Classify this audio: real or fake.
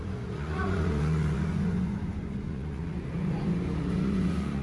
fake